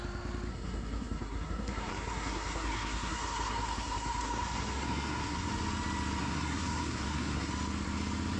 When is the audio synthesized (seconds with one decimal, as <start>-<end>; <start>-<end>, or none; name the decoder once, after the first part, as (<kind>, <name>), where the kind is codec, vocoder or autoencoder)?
0.5-5.5 (codec, SNAC); 6.2-7.5